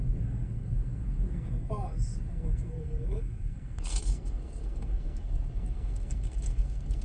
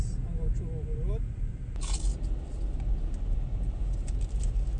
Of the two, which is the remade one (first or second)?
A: first